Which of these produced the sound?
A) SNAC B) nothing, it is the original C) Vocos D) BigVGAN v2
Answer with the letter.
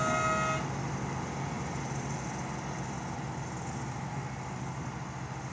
B